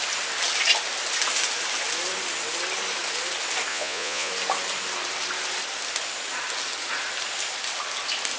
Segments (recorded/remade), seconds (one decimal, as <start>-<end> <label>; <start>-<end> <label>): 0.0-3.7 recorded; 3.7-4.3 remade; 4.3-8.4 recorded